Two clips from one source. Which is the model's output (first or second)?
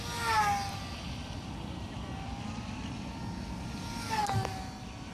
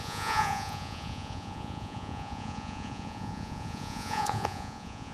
second